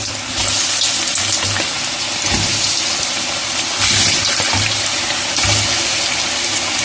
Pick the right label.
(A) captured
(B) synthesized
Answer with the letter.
A